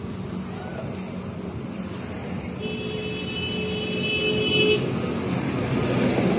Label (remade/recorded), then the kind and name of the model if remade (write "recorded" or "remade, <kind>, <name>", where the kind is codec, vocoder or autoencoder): recorded